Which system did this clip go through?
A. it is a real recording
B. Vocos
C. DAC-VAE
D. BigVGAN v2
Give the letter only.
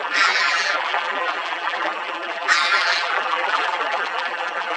D